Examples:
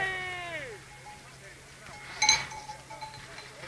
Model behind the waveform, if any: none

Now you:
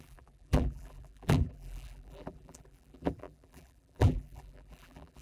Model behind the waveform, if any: vocoder, BigVGAN v2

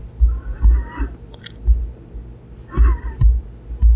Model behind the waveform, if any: none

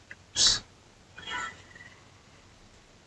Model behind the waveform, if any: none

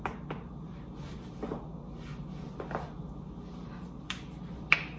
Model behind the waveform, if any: none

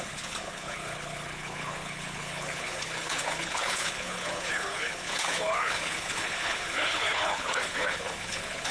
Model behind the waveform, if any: codec, HILCodec